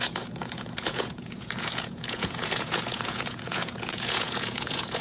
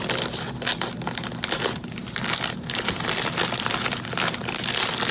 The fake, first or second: first